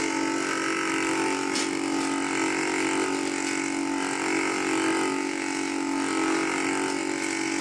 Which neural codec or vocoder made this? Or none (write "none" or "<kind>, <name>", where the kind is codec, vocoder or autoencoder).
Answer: none